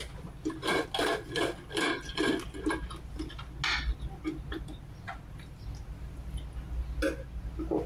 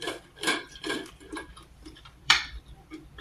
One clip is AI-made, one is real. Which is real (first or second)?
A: first